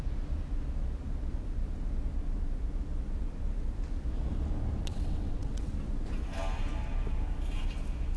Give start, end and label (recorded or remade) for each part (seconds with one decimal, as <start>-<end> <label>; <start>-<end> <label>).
0.0-4.8 recorded; 4.8-5.7 remade; 5.7-8.2 recorded